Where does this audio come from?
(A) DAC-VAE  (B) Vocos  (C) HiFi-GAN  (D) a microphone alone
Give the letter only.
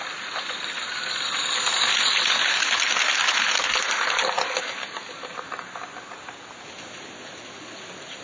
D